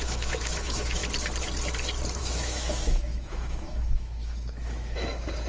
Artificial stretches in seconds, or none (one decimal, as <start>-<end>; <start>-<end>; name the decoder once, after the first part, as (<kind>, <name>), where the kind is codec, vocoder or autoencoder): 0.0-1.0 (autoencoder, DAC-VAE); 2.2-5.5